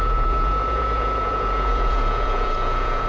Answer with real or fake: fake